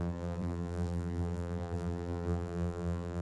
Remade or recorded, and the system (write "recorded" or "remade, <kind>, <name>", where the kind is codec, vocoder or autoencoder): remade, vocoder, BigVGAN v2